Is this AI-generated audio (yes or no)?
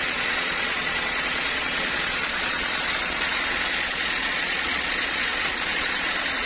yes